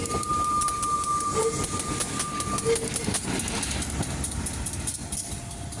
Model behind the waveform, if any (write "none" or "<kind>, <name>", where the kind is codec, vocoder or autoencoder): none